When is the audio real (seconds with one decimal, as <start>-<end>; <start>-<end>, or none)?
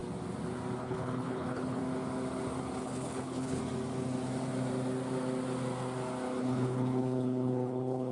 0.0-0.8; 1.8-2.8; 3.6-6.4